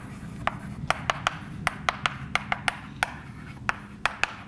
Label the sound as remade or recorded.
recorded